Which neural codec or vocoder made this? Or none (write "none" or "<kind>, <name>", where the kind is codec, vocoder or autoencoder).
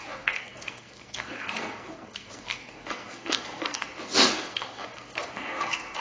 codec, SNAC